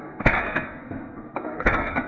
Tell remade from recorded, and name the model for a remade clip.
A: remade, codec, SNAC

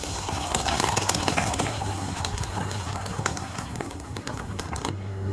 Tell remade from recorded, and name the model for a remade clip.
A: remade, codec, SNAC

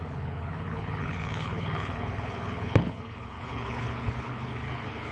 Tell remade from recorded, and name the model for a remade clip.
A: remade, codec, HILCodec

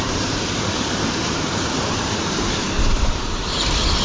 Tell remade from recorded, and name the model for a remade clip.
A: remade, vocoder, BigVGAN v2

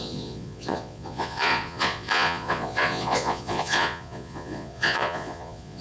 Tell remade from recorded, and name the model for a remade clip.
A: remade, vocoder, Vocos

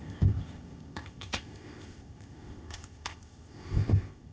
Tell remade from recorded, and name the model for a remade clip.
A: remade, codec, ZipCodec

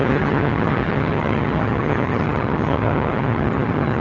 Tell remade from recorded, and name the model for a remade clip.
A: remade, vocoder, HiFi-GAN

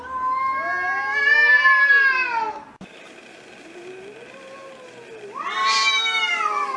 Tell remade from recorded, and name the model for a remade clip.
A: recorded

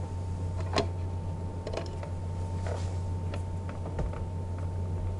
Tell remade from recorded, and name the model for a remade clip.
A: recorded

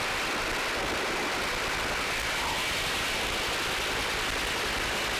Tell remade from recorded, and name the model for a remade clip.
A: recorded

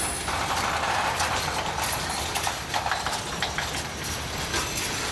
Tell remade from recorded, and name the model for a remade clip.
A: recorded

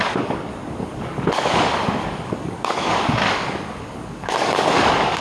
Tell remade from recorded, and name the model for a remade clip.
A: remade, codec, DAC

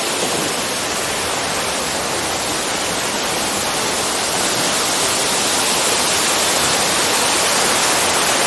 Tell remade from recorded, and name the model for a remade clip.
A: recorded